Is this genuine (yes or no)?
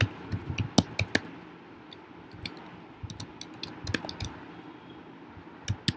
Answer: yes